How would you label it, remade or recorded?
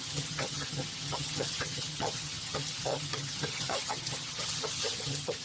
remade